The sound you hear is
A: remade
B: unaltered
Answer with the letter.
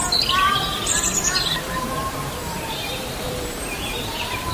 A